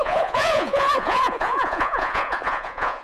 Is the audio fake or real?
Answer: fake